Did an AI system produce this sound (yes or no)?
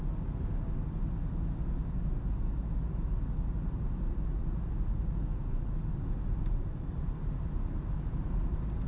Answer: no